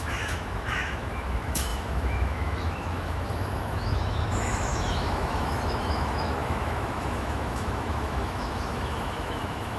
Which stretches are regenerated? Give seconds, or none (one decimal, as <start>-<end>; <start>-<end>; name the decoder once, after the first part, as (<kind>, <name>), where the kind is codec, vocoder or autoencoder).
0.0-9.8 (autoencoder, DAC-VAE)